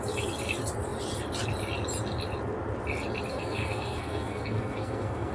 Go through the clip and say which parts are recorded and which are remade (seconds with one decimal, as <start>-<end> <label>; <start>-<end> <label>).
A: 0.0-3.3 recorded; 3.3-5.3 remade